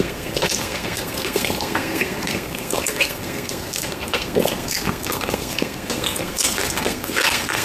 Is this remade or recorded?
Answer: remade